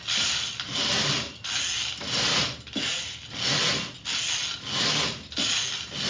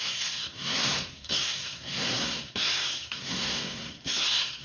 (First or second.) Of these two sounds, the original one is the first